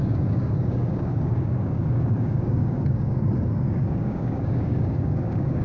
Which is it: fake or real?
fake